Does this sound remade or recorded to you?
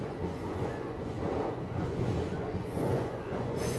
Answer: remade